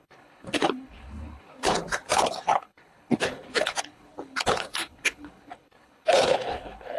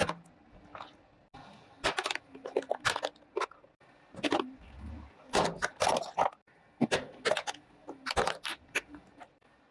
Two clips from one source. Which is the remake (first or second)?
first